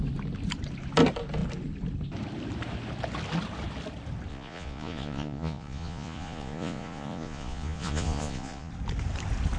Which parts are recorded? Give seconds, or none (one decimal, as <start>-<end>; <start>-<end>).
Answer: 0.0-4.3; 8.7-9.6